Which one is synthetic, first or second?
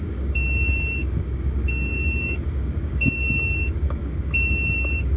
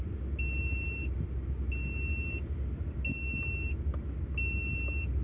first